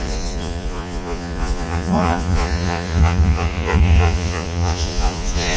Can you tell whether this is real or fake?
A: fake